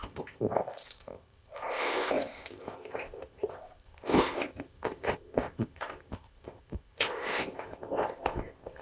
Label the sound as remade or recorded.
remade